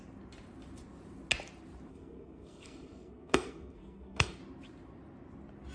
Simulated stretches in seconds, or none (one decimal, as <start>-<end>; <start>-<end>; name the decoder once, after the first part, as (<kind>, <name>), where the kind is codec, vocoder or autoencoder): 1.9-4.4 (codec, SNAC)